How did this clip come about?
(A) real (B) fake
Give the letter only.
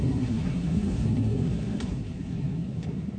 B